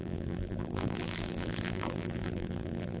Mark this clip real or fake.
fake